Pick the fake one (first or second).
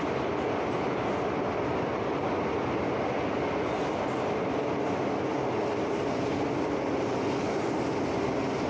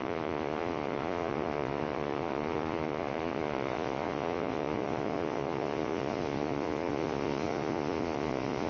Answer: second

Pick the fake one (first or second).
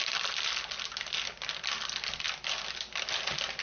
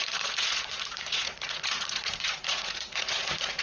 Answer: second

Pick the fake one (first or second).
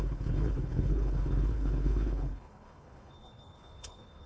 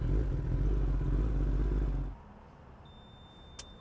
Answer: first